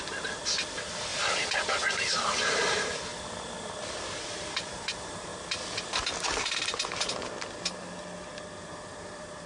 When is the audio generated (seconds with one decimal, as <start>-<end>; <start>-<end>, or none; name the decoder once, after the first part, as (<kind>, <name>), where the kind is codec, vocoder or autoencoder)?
0.0-3.1 (vocoder, BigVGAN v2); 4.2-5.3; 8.6-9.5